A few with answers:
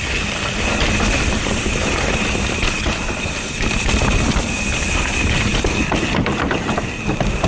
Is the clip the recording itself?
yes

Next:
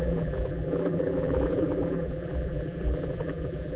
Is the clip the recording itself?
no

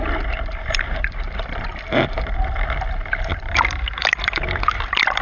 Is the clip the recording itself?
no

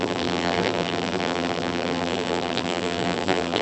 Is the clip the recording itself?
no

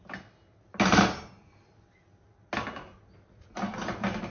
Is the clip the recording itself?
yes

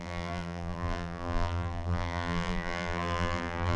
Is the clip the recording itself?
no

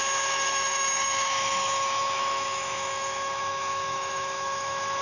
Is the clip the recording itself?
no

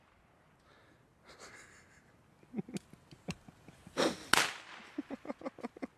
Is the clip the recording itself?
yes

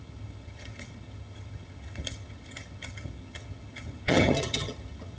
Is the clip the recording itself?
no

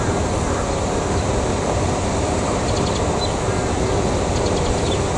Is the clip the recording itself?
yes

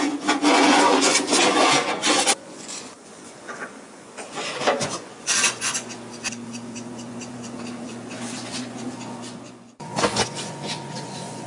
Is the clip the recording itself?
no